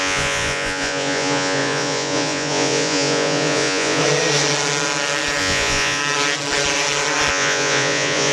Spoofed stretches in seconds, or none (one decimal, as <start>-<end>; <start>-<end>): 0.0-4.0; 5.4-6.0; 7.3-8.3